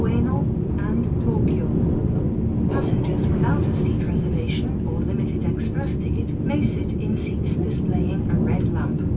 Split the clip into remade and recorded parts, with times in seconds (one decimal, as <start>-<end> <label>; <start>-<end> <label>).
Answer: 0.0-9.2 recorded